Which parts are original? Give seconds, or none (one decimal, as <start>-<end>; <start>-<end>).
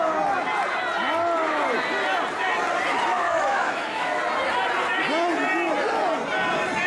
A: 0.0-3.1; 4.2-6.9